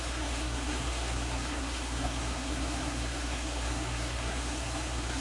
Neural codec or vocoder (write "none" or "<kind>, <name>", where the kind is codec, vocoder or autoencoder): codec, SNAC